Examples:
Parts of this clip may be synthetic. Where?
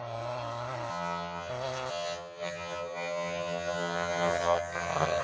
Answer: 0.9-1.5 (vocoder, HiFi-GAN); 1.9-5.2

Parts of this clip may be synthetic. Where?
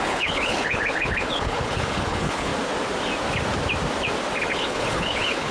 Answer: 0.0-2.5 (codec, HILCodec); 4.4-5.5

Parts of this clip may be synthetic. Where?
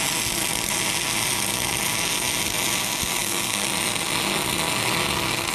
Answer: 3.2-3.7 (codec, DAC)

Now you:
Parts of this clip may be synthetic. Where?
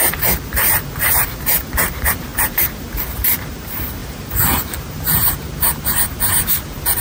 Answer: 0.0-7.0 (vocoder, BigVGAN v2)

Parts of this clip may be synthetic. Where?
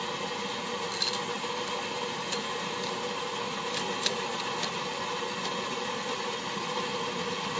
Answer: none